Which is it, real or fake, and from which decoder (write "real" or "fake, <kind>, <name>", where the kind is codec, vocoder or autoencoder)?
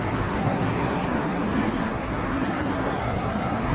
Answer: fake, codec, SNAC